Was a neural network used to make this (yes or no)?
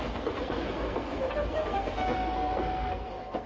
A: yes